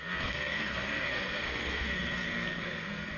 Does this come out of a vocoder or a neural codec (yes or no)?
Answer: yes